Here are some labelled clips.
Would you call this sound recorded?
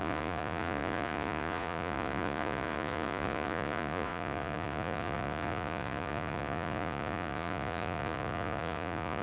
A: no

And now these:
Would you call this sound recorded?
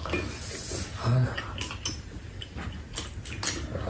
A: yes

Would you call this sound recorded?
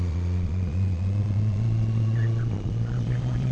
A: no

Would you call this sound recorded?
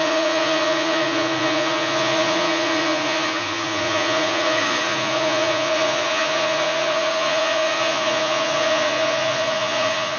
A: no